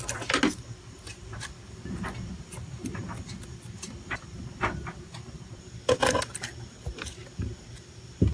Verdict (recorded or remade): recorded